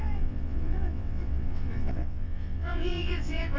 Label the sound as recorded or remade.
remade